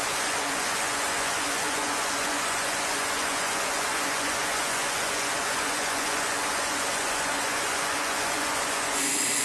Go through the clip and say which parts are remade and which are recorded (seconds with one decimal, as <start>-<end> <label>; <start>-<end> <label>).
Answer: 0.0-9.4 remade